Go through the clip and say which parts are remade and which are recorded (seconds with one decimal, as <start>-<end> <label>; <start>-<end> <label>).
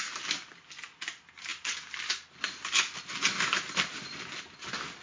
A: 0.0-5.0 recorded